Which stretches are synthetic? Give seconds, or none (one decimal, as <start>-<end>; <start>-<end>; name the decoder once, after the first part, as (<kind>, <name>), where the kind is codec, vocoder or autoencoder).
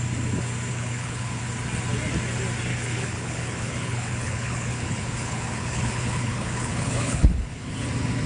0.7-1.4 (codec, HILCodec); 2.7-7.7